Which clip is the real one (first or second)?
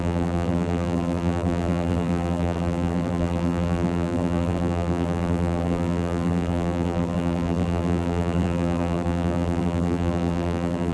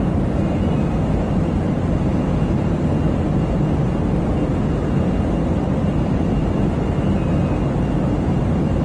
second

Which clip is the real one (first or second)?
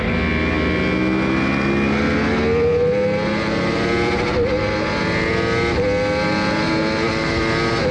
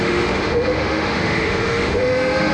first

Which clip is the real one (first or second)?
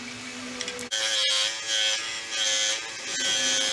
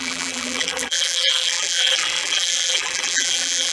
first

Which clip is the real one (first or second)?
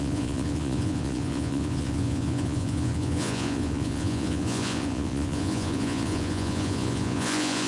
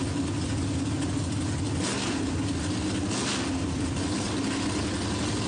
second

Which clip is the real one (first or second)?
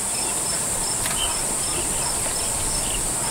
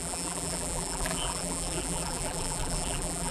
first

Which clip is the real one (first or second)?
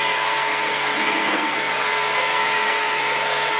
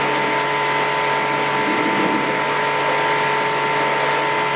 second